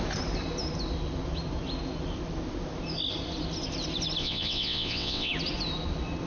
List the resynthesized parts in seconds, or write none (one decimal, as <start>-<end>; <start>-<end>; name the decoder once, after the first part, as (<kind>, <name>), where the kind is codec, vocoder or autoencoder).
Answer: 4.2-5.3 (vocoder, WaveNeXt)